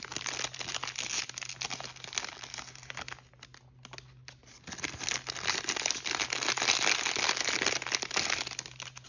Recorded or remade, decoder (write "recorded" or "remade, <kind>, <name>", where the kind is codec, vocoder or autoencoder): recorded